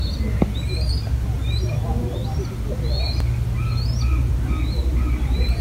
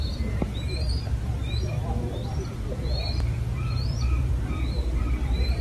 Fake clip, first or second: second